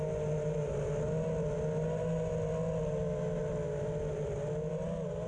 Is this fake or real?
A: real